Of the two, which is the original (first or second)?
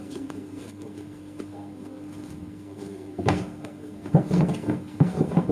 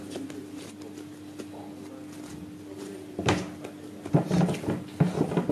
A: second